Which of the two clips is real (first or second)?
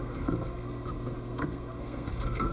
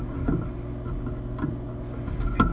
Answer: second